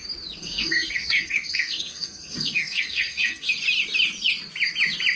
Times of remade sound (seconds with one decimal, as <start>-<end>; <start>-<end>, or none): 0.4-3.5